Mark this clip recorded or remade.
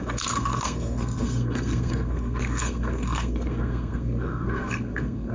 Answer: remade